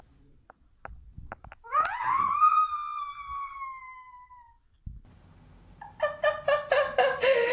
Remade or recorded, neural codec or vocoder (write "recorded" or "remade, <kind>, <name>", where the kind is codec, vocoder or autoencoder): recorded